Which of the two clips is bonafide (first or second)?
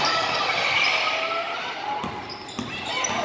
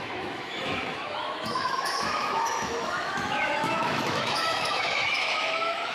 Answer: first